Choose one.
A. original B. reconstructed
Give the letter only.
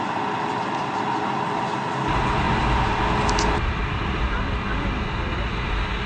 A